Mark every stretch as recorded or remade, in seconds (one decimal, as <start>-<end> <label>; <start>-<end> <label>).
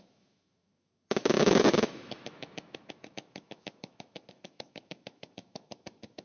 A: 0.0-6.2 remade